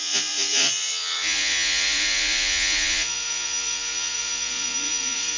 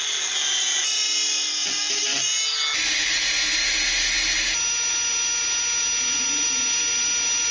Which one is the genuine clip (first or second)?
second